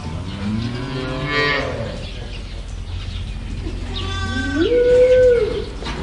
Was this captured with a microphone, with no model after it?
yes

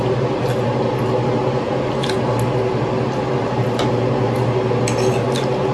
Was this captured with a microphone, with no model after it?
yes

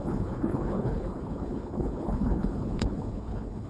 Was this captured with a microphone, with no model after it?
no